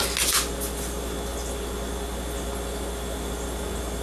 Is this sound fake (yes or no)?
no